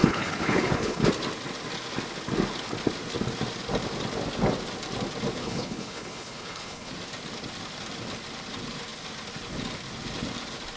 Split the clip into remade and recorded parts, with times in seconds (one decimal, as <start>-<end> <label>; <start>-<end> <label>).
0.0-1.1 remade; 1.1-5.4 recorded; 5.4-6.9 remade; 6.9-10.8 recorded